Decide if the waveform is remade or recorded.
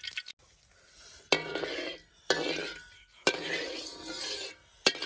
recorded